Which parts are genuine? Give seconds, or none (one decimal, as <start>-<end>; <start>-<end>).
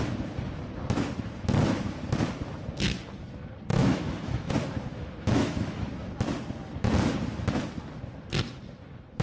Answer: 0.0-3.7; 4.5-4.9; 5.9-9.2